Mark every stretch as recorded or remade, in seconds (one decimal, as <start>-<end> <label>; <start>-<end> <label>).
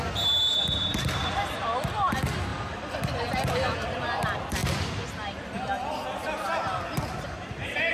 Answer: 0.0-7.9 recorded